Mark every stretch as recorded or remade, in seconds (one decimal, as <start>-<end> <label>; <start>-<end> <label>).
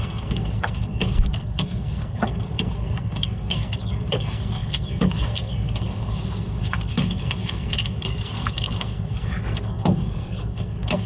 0.0-11.1 remade